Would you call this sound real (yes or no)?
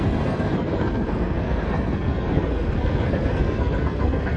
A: no